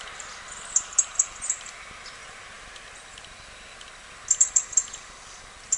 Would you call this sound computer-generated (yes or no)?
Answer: no